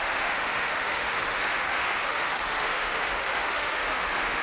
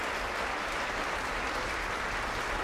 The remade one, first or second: first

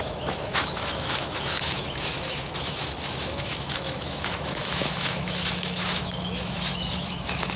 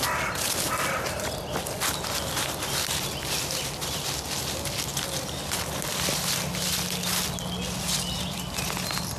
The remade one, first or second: first